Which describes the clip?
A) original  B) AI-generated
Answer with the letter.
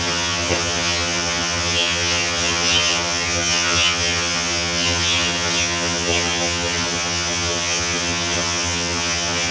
B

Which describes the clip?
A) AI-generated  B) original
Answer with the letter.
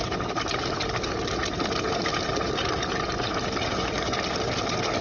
B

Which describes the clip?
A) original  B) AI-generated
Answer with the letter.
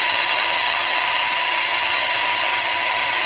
B